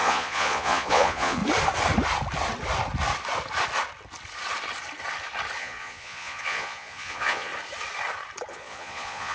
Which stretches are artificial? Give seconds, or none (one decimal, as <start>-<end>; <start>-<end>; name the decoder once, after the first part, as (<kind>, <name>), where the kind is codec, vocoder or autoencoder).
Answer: 0.0-1.4 (vocoder, Vocos); 5.6-7.5; 8.5-9.3